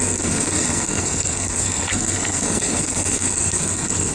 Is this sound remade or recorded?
remade